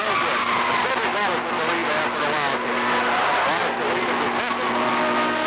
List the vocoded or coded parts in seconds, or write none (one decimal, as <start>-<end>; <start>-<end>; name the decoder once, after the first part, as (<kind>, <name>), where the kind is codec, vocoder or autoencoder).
none